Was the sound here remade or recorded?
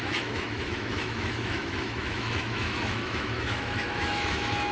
remade